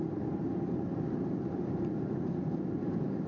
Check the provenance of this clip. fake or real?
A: real